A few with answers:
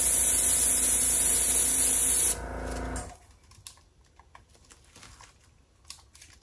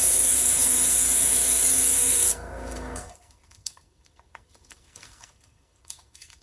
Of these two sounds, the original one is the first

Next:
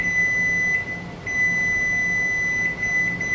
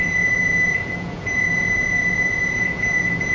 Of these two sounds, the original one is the first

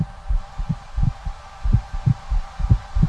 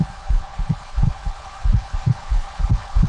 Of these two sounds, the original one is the first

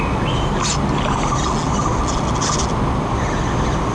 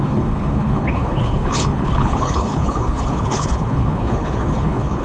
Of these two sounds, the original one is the first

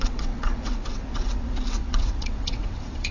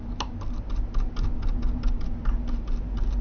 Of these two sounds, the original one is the second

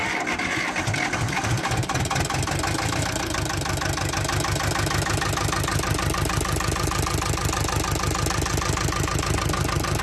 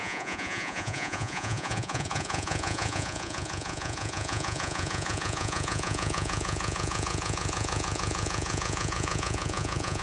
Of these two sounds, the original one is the first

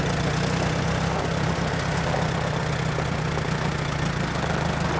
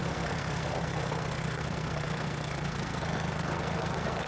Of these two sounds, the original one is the first